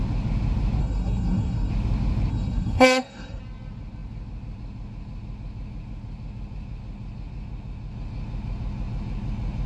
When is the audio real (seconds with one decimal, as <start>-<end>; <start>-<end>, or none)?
0.0-0.8; 1.7-2.3; 3.4-9.7